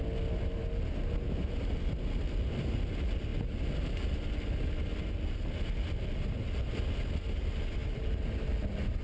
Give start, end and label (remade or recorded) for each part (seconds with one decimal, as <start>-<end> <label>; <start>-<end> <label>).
0.0-9.0 recorded